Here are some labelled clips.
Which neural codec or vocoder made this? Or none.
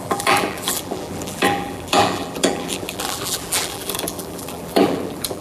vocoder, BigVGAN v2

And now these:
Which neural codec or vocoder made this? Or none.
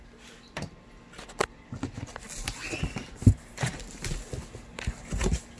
none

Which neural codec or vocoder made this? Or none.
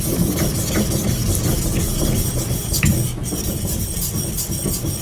none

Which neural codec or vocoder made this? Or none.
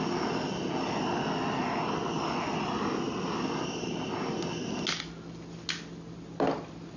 none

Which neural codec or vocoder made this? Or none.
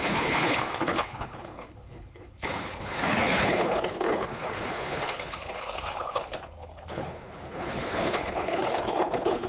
codec, HILCodec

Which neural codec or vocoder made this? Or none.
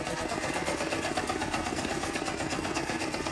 codec, SNAC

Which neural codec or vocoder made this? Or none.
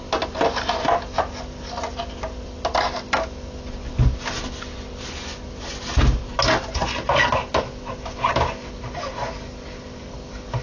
none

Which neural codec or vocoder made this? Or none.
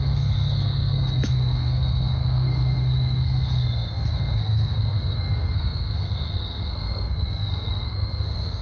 codec, SNAC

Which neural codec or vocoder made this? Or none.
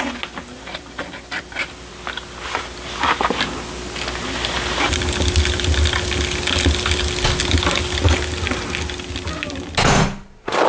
none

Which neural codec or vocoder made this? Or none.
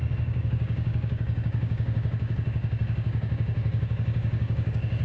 codec, DAC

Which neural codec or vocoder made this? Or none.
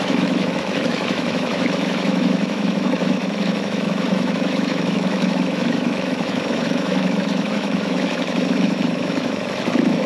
autoencoder, DAC-VAE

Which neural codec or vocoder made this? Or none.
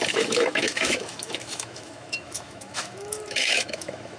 autoencoder, DAC-VAE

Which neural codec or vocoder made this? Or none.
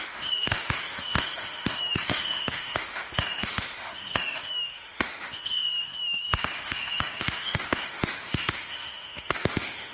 autoencoder, DAC-VAE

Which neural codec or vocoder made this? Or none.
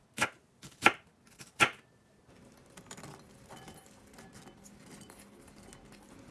none